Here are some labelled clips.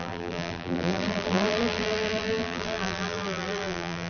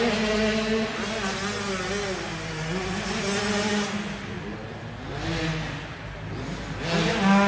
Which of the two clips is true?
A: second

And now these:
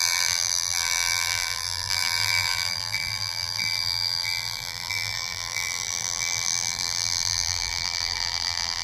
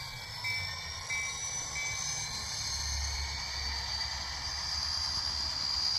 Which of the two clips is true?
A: second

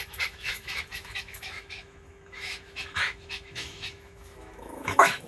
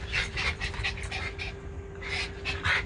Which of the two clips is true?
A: second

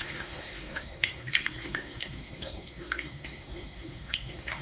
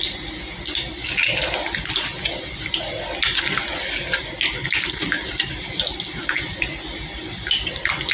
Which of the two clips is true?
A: second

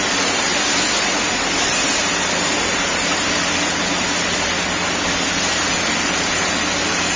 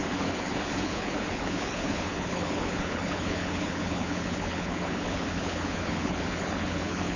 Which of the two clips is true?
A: first